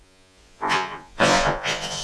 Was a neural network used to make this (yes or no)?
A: yes